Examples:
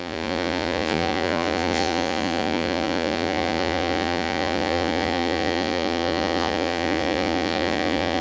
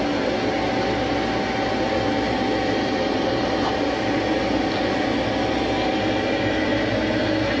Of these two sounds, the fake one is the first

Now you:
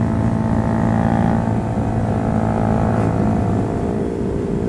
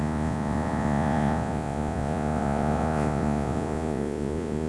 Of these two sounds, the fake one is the second